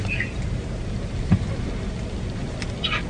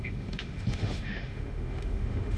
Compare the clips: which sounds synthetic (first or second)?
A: second